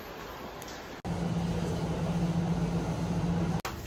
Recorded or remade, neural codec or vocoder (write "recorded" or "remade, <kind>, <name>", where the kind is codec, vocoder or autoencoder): recorded